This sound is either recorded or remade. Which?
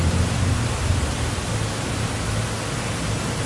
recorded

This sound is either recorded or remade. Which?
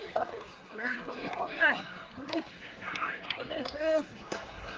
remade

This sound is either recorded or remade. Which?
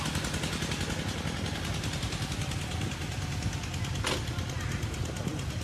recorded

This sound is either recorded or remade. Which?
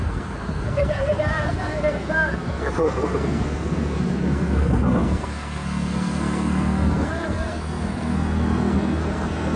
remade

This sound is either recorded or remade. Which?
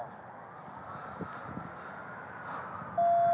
recorded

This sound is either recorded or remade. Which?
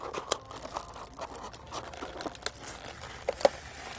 recorded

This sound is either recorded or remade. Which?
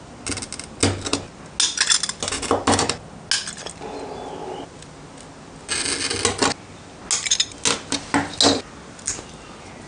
recorded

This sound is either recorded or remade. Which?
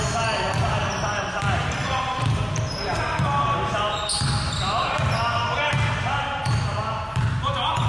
recorded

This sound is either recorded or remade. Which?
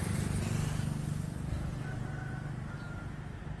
recorded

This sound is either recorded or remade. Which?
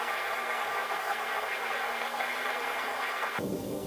remade